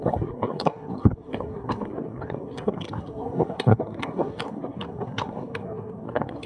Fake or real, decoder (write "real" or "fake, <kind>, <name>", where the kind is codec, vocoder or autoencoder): fake, codec, SNAC